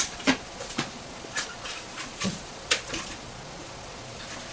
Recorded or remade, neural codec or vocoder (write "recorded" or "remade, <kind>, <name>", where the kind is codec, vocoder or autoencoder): remade, vocoder, Vocos